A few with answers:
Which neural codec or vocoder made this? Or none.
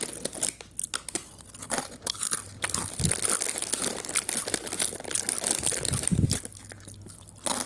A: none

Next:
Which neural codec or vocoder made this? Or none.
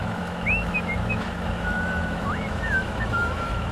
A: autoencoder, DAC-VAE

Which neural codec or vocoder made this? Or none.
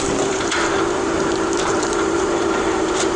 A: vocoder, BigVGAN v2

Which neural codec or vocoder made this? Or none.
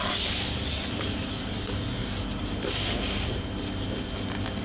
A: none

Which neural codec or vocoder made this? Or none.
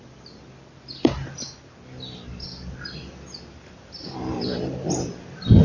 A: none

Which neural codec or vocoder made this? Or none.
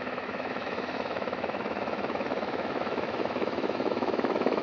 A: autoencoder, DAC-VAE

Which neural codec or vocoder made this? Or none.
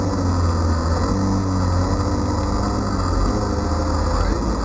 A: none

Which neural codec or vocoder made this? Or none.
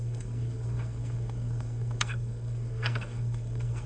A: codec, SNAC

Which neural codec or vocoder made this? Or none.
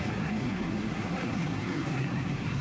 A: codec, SNAC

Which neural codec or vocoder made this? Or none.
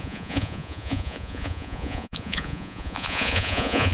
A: vocoder, Vocos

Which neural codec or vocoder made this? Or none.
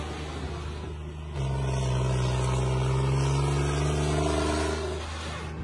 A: none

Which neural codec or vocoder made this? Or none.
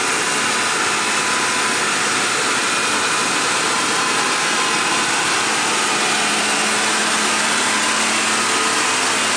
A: none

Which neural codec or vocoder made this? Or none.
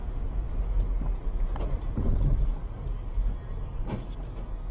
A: none